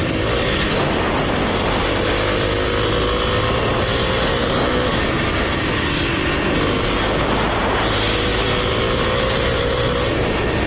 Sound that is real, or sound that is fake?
real